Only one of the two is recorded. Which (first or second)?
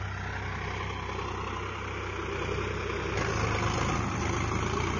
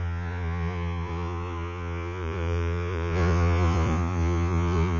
first